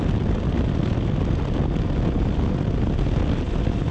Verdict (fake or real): real